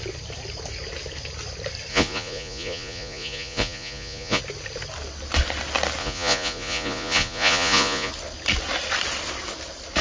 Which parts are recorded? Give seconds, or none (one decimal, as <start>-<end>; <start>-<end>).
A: 0.0-1.9; 4.4-6.0; 8.1-10.0